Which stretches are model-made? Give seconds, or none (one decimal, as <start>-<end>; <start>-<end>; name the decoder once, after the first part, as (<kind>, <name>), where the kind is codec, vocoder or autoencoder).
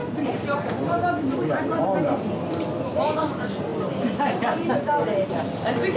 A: none